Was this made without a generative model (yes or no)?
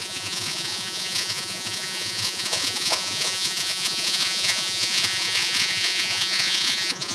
no